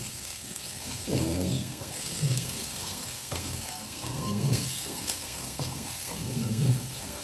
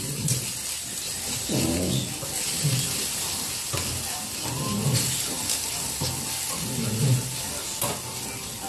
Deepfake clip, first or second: first